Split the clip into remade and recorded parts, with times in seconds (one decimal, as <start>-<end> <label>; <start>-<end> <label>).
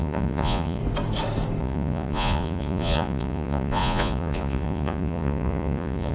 0.0-0.8 remade; 0.8-1.6 recorded; 1.6-6.1 remade